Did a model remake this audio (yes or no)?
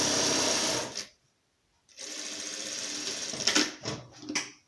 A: no